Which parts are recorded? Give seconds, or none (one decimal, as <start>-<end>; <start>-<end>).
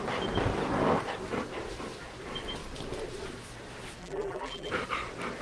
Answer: 0.0-4.0; 4.7-5.4